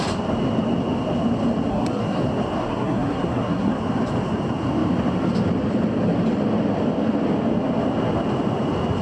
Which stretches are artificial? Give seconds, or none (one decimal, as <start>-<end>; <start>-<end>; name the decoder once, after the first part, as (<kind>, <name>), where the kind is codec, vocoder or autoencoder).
1.7-2.2 (codec, SNAC); 2.6-3.7